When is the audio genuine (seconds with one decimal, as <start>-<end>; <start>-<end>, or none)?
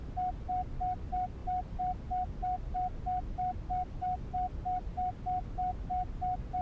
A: 0.0-6.6